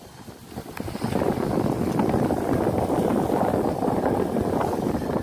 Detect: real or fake real